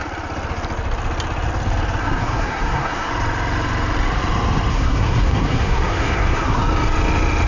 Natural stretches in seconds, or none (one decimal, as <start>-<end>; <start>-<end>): 0.0-2.0; 3.1-4.7; 6.6-7.5